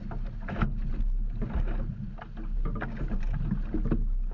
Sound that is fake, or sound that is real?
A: real